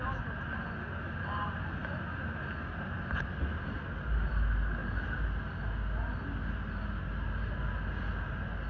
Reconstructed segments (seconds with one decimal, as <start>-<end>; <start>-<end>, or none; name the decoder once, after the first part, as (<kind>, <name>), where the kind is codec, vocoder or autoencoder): none